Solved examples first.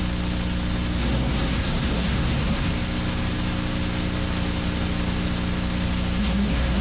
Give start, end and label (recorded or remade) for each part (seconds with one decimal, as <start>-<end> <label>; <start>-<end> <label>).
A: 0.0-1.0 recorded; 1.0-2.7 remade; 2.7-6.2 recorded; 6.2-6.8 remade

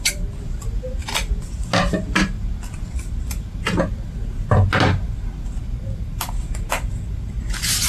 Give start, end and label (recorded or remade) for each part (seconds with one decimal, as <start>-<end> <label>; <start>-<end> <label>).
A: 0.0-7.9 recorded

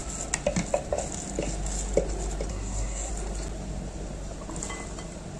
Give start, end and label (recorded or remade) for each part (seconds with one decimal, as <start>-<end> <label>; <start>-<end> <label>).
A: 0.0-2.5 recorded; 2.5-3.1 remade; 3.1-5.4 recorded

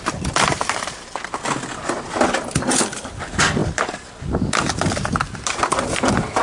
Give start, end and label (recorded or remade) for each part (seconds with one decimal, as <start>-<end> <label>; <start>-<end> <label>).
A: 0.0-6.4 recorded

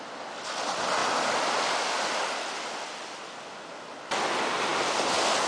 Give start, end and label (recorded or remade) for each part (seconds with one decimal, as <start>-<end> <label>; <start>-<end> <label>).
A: 0.0-5.5 recorded

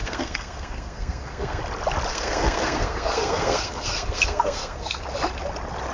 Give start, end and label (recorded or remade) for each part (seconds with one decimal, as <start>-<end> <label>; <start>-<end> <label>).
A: 0.0-1.6 remade; 1.6-2.1 recorded; 2.1-5.0 remade; 5.0-5.9 recorded

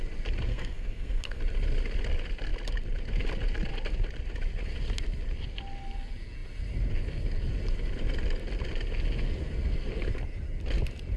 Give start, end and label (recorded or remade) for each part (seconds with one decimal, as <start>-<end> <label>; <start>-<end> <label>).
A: 0.0-0.5 recorded; 0.5-1.4 remade; 1.4-11.2 recorded

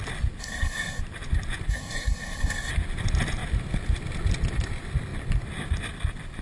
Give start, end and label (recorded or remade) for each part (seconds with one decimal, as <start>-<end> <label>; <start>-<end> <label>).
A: 0.0-0.4 recorded; 0.4-1.0 remade; 1.0-1.7 recorded; 1.7-2.7 remade; 2.7-6.4 recorded